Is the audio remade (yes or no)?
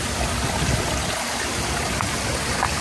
no